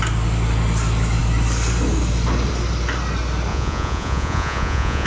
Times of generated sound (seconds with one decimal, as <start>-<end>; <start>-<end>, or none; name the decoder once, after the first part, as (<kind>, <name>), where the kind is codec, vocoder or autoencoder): 3.5-5.1 (vocoder, Vocos)